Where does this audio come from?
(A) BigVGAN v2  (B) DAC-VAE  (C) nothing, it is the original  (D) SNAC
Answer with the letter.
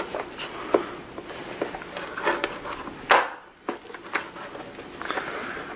C